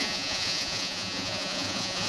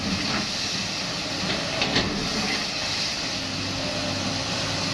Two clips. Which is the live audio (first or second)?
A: second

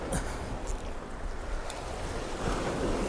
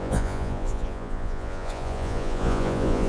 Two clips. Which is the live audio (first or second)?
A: first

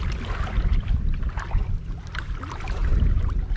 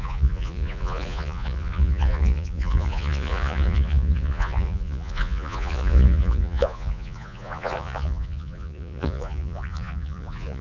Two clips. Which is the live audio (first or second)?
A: first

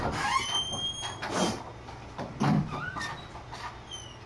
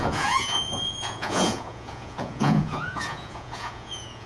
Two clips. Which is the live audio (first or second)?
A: first